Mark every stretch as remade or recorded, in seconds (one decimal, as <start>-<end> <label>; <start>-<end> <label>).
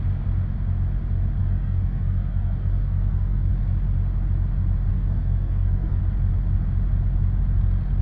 0.0-1.4 recorded; 1.4-3.5 remade; 3.5-4.9 recorded; 4.9-6.0 remade; 6.0-8.0 recorded